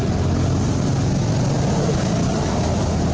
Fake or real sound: real